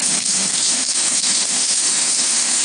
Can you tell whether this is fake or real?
fake